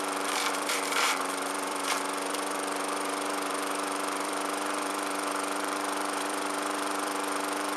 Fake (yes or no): yes